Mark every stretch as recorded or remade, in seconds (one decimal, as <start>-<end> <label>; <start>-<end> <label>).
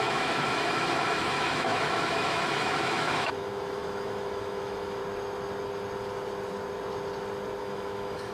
0.0-5.0 remade; 5.0-7.6 recorded; 7.6-8.3 remade